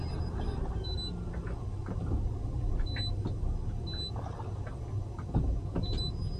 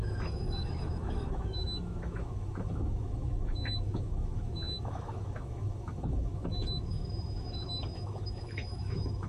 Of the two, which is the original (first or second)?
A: first